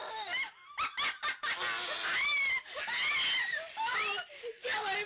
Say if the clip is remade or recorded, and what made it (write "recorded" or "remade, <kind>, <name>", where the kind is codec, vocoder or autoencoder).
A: recorded